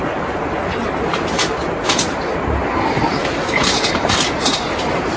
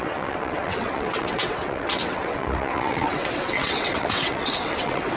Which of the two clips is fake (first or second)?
second